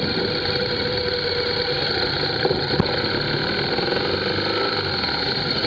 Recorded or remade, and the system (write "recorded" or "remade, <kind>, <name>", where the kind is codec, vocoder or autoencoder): recorded